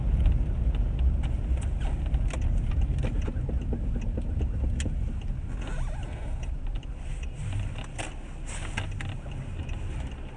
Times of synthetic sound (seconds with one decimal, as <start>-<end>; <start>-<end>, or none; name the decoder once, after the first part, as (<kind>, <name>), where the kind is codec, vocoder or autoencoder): 6.0-8.1 (vocoder, BigVGAN v2)